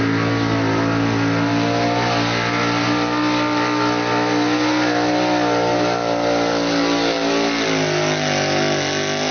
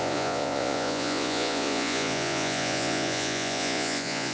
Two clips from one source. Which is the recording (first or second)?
first